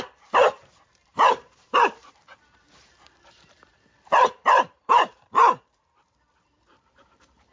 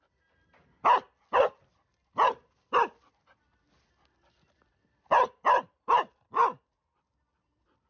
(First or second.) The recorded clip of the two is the second